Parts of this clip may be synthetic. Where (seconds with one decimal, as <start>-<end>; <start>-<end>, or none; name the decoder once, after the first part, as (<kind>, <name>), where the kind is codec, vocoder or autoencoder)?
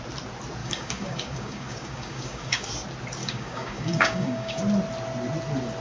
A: 0.6-2.7 (codec, DAC); 3.2-4.6